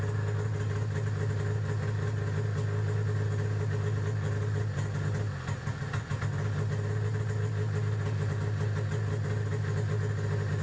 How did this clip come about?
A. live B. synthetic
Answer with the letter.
A